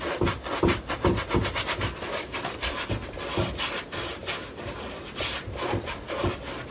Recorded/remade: recorded